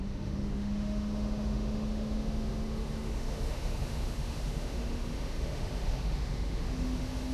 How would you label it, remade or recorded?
remade